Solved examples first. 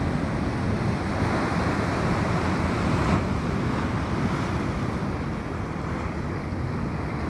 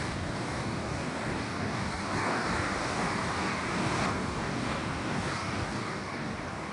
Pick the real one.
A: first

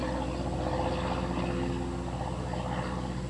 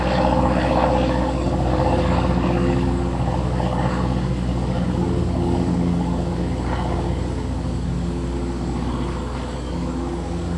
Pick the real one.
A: first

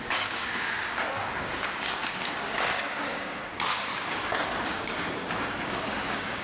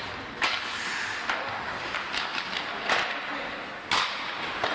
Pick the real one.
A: second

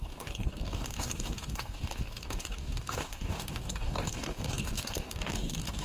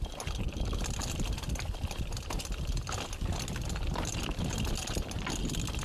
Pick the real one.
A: second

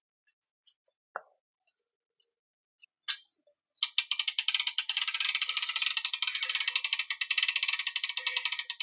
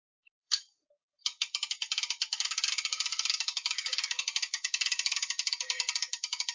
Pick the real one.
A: first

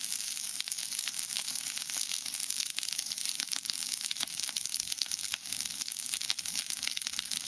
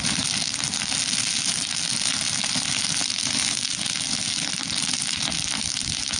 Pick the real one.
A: second